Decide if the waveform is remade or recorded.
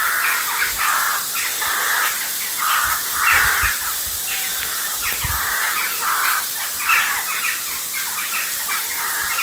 remade